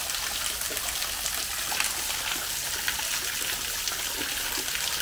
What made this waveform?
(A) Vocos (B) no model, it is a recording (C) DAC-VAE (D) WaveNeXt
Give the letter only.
B